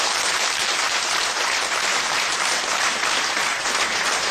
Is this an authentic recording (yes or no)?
no